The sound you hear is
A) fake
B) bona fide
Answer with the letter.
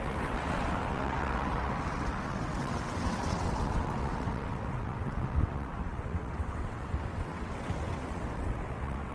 A